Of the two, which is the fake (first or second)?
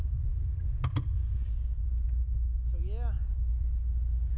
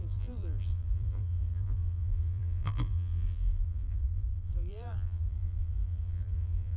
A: second